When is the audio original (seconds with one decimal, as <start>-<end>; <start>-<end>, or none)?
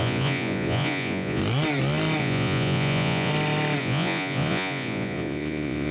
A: 1.4-2.2; 3.3-3.8